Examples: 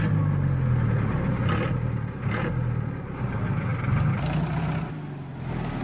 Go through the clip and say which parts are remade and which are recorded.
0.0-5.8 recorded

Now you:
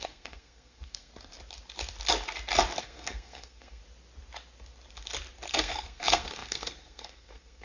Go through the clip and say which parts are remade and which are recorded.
0.0-1.1 remade; 1.1-2.8 recorded; 2.8-3.8 remade; 3.8-5.5 recorded; 5.5-7.6 remade

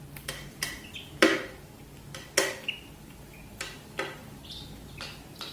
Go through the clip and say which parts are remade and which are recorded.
0.0-1.3 remade; 1.3-3.0 recorded; 3.0-5.5 remade

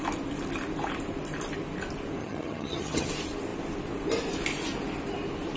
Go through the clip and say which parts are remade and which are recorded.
0.0-2.2 recorded; 2.2-3.1 remade; 3.1-5.6 recorded

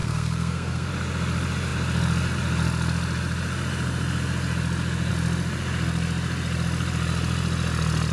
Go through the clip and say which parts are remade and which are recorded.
0.0-0.9 remade; 0.9-8.1 recorded

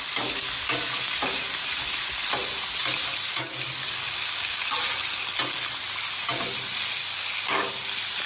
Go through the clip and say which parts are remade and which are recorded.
0.0-3.8 recorded; 3.8-4.7 remade; 4.7-7.0 recorded; 7.0-7.7 remade; 7.7-8.3 recorded

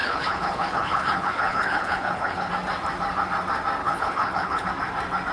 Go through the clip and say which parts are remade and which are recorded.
0.0-2.5 remade; 2.5-3.8 recorded; 3.8-4.7 remade; 4.7-5.3 recorded